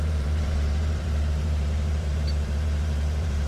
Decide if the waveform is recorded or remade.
remade